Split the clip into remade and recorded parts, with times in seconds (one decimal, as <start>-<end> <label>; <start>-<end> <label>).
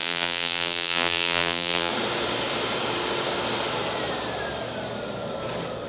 0.0-1.9 remade; 1.9-5.9 recorded